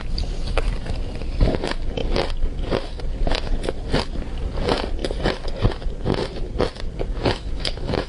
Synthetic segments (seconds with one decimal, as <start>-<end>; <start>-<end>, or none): 7.2-8.1